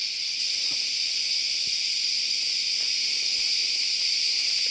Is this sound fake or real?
fake